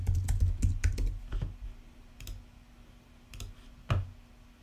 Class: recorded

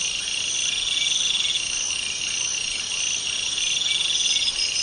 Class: recorded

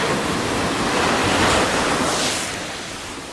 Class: recorded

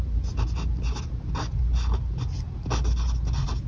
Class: recorded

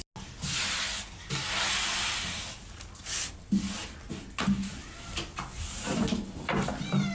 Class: recorded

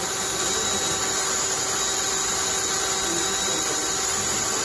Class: recorded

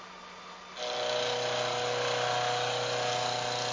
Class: recorded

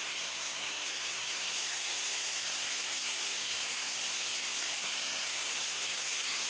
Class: remade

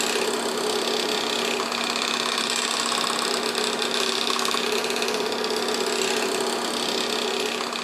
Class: recorded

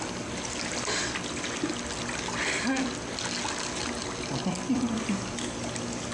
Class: recorded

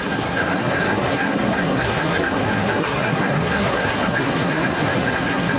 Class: remade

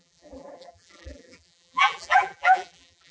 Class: remade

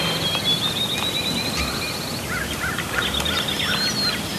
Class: recorded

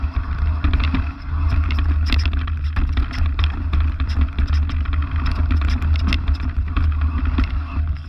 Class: recorded